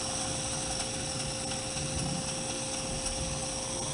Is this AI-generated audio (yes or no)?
no